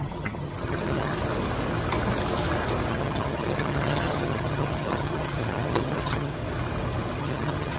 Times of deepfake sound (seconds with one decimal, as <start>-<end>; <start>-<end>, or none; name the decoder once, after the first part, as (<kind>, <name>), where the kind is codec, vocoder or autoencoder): 0.0-1.1 (vocoder, HiFi-GAN); 2.9-6.3; 7.2-7.8